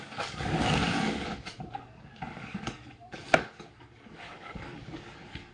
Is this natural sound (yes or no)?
no